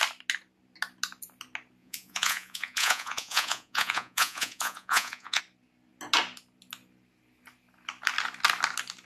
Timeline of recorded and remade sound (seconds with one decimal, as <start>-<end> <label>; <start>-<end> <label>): 0.0-1.8 recorded; 1.8-5.4 remade; 5.4-9.1 recorded